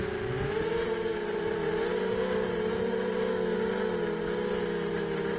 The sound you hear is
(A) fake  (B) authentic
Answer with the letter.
B